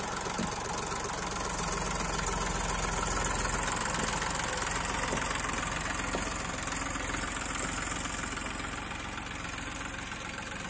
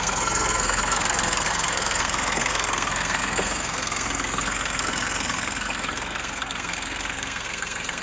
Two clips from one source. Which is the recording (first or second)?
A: first